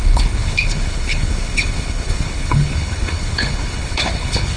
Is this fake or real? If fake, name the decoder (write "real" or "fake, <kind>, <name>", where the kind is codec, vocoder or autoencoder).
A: fake, codec, HILCodec